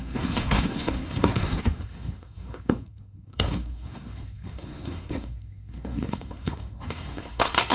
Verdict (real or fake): fake